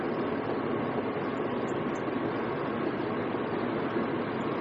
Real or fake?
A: real